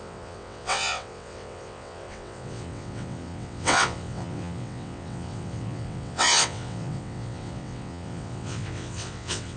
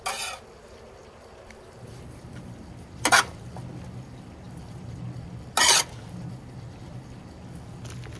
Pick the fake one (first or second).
first